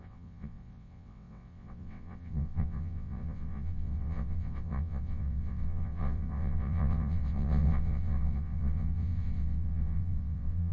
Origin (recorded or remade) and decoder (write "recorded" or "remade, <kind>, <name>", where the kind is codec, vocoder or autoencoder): remade, vocoder, WaveNeXt